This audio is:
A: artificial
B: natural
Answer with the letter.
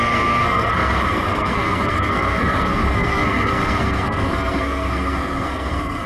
A